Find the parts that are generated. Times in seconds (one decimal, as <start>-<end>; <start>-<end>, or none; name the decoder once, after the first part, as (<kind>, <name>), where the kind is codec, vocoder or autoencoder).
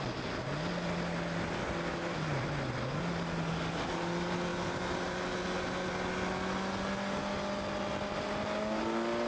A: none